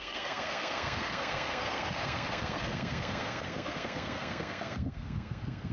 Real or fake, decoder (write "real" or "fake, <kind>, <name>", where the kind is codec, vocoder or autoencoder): fake, codec, SNAC